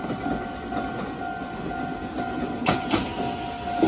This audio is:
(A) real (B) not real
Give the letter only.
A